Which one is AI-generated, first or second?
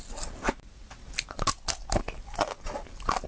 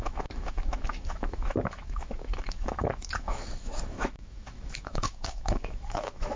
second